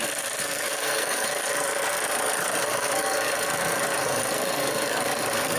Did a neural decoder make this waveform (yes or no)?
yes